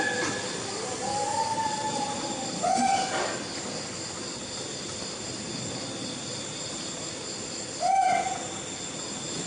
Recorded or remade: recorded